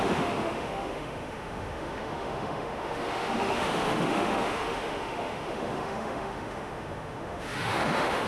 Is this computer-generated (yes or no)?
yes